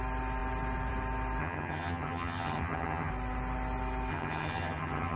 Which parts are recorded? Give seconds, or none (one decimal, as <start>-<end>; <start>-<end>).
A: 0.0-1.4; 3.1-4.1

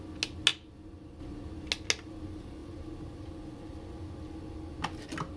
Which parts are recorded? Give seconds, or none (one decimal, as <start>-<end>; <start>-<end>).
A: 0.0-5.4

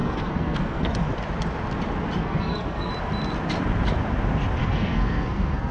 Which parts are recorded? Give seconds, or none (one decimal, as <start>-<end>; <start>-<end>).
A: 0.9-2.2; 2.9-4.6

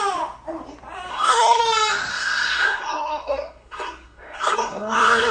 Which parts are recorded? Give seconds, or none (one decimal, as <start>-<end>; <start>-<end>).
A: 0.0-1.1; 1.6-2.1

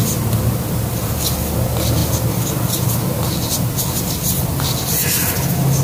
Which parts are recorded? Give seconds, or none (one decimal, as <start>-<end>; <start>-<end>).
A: 0.0-5.8

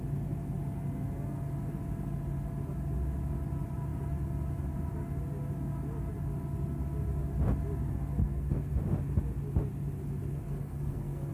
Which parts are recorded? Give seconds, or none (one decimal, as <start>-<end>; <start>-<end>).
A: 0.0-8.2; 8.7-10.3